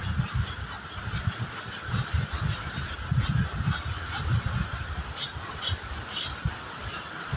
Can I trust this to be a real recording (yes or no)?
yes